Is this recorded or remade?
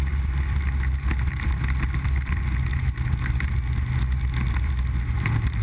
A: recorded